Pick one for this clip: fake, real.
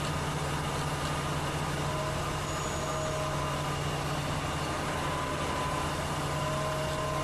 real